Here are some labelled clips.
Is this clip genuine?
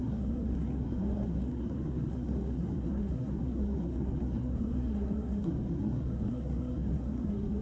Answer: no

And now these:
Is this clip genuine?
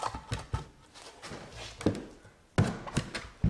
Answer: yes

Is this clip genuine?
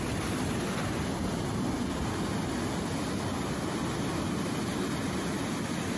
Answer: yes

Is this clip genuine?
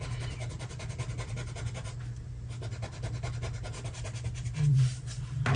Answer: yes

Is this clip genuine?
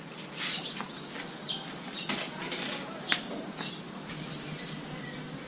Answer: yes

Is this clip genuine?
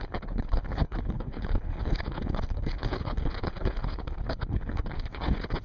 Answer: no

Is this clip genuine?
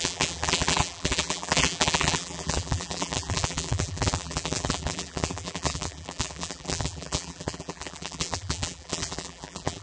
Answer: no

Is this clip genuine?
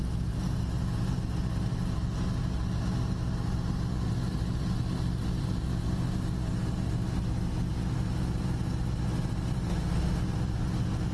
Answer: yes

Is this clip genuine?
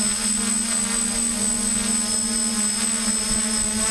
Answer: yes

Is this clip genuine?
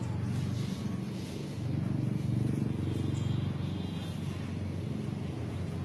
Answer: yes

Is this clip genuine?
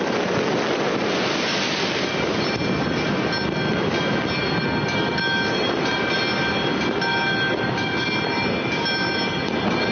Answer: yes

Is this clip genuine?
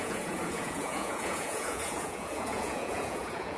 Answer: no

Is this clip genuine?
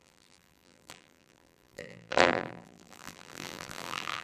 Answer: no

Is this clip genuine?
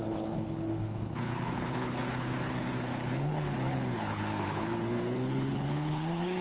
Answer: no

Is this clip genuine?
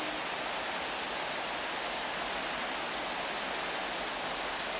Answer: yes